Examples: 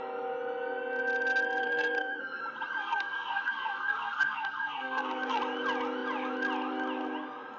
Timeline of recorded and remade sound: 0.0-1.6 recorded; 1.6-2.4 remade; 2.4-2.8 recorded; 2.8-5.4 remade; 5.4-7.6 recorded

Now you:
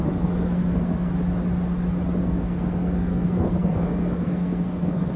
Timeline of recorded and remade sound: 0.0-1.1 remade; 1.1-2.2 recorded; 2.2-5.2 remade